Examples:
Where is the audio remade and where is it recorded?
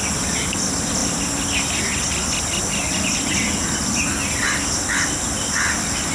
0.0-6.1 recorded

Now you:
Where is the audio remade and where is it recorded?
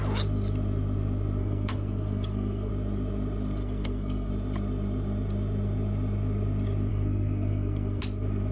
0.0-1.4 recorded; 1.4-2.7 remade; 2.7-3.6 recorded; 3.6-4.3 remade; 4.3-6.9 recorded; 6.9-8.0 remade; 8.0-8.5 recorded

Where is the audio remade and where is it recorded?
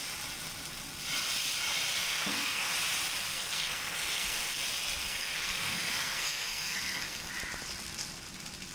0.0-1.9 recorded; 1.9-2.7 remade; 2.7-3.3 recorded; 3.3-4.6 remade; 4.6-5.0 recorded; 5.0-7.3 remade; 7.3-8.7 recorded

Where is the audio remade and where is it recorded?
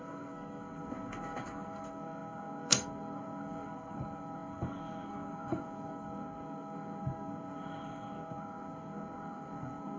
0.0-10.0 remade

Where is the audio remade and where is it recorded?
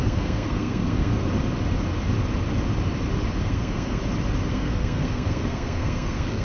0.0-1.1 remade; 1.1-3.4 recorded; 3.4-4.0 remade; 4.0-4.5 recorded; 4.5-6.4 remade